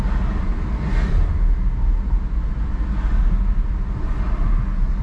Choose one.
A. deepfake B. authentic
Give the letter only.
B